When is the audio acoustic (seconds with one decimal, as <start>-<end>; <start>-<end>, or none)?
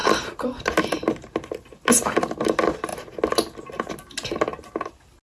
0.0-5.3